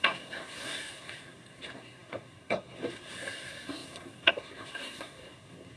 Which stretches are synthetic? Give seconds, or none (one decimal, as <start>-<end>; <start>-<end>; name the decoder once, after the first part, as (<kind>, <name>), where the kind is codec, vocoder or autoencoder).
0.0-5.8 (codec, SNAC)

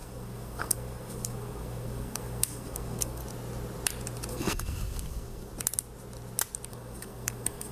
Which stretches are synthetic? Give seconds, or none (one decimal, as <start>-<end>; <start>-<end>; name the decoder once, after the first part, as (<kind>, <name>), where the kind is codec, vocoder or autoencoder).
0.0-3.2 (codec, SNAC); 4.3-5.5; 6.7-7.7

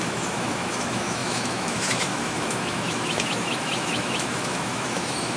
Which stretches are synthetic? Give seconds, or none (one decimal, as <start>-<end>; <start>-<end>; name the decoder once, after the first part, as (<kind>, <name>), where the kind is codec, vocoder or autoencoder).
0.0-5.4 (autoencoder, DAC-VAE)

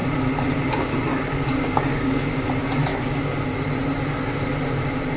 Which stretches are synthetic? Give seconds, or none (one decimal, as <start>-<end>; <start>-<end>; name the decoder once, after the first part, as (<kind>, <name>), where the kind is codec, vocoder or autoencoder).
1.1-2.5 (codec, DAC); 2.9-3.4

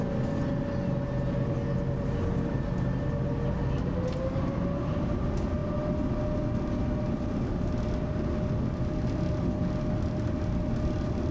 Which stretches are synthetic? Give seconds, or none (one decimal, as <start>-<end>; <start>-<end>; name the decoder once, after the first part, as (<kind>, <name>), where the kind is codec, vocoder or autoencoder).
none